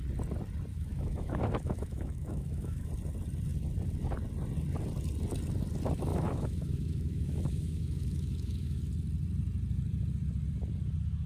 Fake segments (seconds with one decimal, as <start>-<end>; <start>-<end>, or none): 0.7-2.9; 6.1-8.8